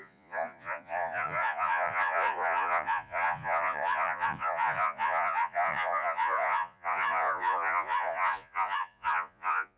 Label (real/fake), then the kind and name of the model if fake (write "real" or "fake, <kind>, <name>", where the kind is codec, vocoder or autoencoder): fake, vocoder, Vocos